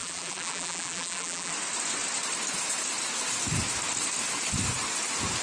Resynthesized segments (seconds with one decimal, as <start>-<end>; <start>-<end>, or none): 0.0-1.5